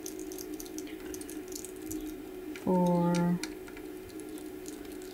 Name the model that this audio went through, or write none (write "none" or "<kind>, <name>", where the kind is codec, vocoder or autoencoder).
none